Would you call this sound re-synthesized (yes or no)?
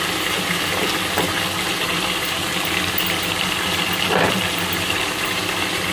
yes